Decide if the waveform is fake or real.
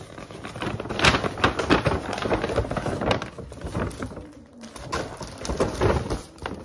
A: real